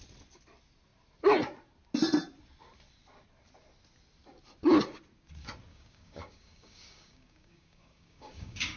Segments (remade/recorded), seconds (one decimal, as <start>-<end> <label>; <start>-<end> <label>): 0.0-5.7 recorded; 5.7-8.8 remade